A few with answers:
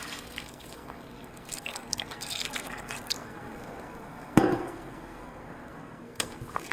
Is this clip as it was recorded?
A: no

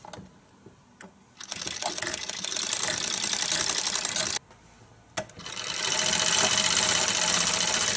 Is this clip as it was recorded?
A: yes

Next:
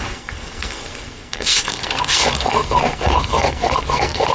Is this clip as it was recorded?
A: no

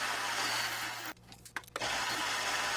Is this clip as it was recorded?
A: yes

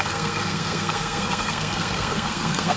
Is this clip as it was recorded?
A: no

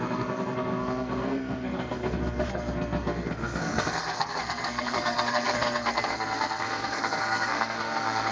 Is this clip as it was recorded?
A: no